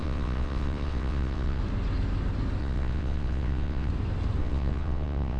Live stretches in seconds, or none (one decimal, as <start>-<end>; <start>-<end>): 1.6-2.6; 3.9-4.4